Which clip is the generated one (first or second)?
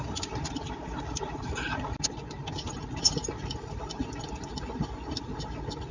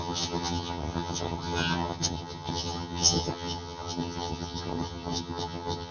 second